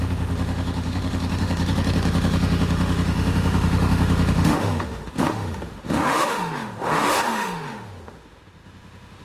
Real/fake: fake